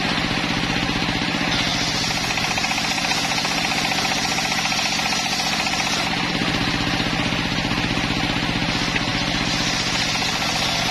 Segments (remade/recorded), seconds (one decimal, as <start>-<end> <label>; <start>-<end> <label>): 0.0-10.9 recorded